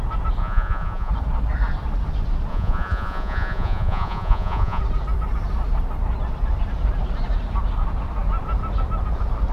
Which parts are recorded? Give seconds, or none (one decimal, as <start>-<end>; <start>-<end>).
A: 0.0-0.4; 1.1-2.5; 4.8-9.5

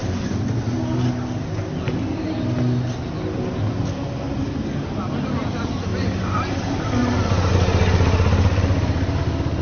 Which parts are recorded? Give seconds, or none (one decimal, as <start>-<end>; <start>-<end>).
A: 0.0-9.6

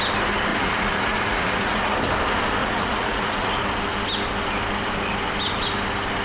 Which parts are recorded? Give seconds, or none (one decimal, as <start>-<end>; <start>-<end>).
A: 0.0-0.5; 1.9-2.6; 3.5-6.2

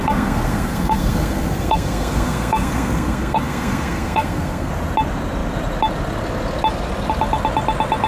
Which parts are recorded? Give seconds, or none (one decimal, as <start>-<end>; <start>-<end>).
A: 4.7-8.1

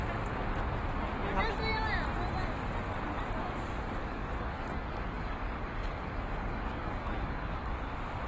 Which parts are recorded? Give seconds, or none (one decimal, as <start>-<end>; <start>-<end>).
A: 0.0-4.0; 7.9-8.3

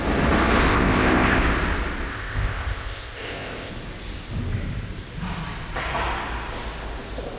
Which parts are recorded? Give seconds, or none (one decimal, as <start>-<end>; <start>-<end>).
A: 0.0-0.7; 1.4-2.1; 3.7-7.4

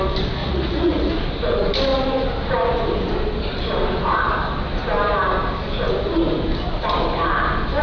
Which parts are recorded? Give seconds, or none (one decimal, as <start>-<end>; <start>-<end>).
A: 0.0-0.4; 1.1-7.8